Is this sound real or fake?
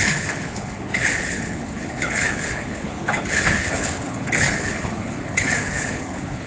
fake